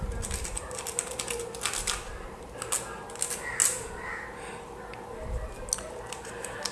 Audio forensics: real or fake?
real